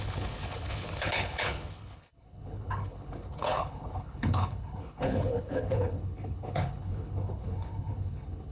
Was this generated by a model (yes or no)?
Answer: yes